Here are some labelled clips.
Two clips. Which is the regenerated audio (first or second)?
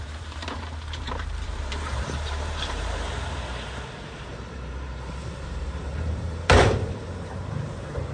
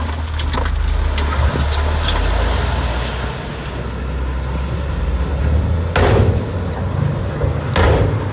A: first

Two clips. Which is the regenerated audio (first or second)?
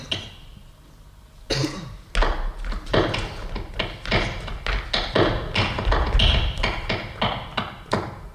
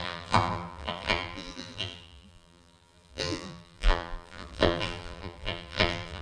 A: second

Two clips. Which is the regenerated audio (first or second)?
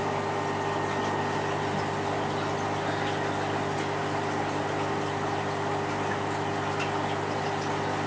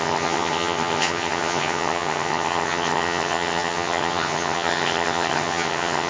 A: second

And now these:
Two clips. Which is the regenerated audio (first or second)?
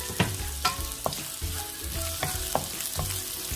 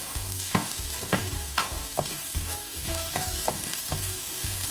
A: second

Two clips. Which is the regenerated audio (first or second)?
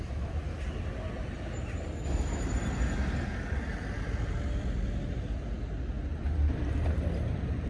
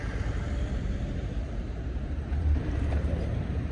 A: second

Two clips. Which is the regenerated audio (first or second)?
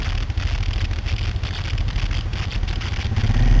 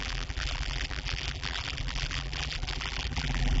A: second